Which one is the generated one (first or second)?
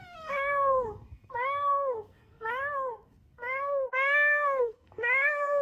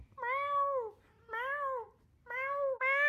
first